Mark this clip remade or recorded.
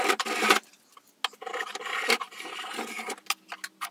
recorded